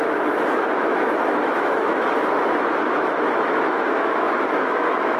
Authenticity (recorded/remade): remade